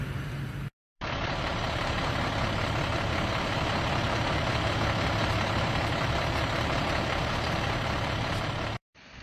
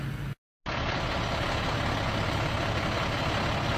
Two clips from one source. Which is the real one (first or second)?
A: second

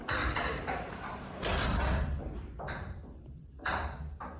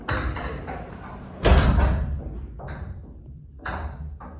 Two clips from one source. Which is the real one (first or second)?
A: second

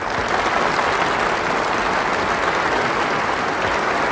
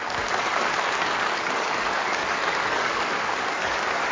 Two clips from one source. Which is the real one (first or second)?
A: first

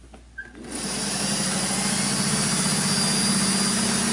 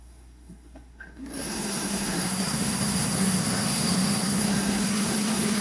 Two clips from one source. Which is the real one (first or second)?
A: first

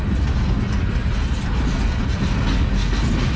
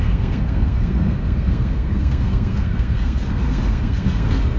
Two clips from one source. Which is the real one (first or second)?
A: first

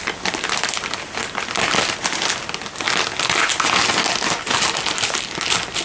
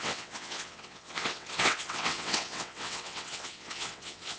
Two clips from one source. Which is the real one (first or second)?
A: first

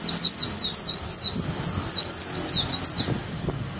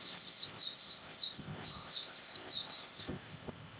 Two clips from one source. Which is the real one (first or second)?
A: first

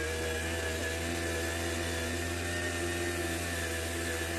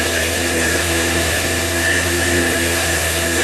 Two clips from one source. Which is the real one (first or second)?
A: first